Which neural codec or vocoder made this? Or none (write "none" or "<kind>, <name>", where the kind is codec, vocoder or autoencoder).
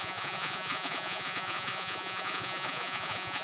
vocoder, Vocos